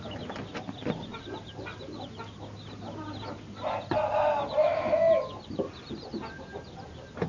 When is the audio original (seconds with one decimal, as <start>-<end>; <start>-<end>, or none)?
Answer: 0.0-4.6; 5.2-7.3